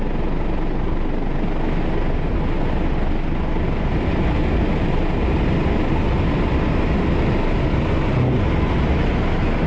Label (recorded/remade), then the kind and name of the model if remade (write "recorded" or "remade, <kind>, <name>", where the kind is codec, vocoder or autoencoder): recorded